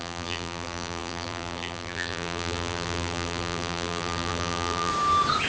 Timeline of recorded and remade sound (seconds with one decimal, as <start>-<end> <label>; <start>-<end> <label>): 0.0-4.9 remade; 4.9-5.5 recorded